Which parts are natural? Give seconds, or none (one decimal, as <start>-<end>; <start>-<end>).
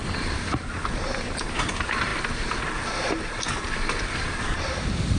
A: 1.7-5.2